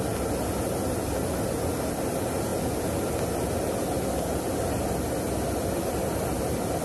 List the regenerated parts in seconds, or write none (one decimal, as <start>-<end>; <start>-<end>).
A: none